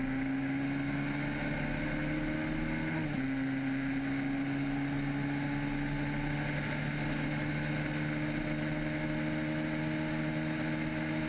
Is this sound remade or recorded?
recorded